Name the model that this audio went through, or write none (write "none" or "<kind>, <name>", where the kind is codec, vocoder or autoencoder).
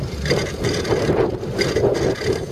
none